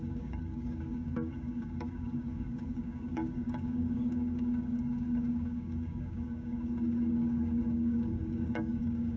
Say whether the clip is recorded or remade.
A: remade